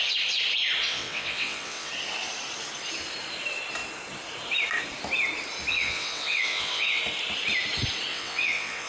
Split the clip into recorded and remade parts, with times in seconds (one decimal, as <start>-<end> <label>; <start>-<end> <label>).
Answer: 0.0-0.8 recorded; 0.8-1.9 remade; 1.9-5.7 recorded; 5.7-7.0 remade; 7.0-8.1 recorded; 8.1-8.9 remade